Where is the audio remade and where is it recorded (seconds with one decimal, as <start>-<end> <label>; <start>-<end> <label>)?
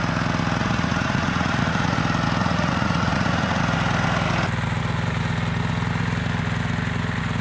0.0-0.6 recorded; 0.6-2.0 remade; 2.0-2.4 recorded; 2.4-3.6 remade; 3.6-7.4 recorded